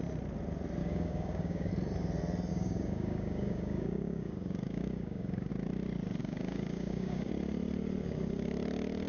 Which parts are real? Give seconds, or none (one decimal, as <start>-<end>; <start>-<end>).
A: 0.0-0.8; 1.7-2.5; 5.5-6.2; 7.3-9.1